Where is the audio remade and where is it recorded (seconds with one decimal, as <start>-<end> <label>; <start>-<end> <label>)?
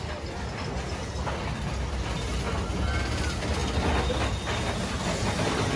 0.0-5.8 recorded